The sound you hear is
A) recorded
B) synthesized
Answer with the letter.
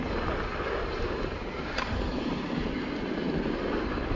A